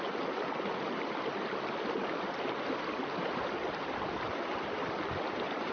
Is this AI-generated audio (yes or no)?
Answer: no